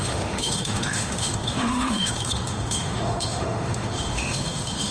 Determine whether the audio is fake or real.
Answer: fake